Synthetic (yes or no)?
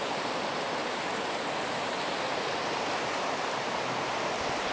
no